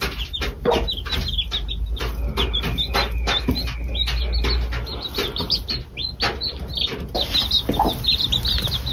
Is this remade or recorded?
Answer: recorded